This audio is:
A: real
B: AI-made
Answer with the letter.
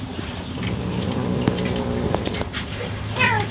A